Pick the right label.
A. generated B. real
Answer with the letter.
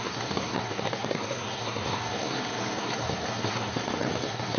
A